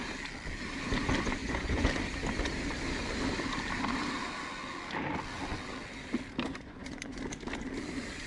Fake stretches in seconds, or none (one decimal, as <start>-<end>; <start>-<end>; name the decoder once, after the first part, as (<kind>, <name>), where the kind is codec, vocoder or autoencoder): 1.4-1.9 (vocoder, Vocos); 6.5-7.2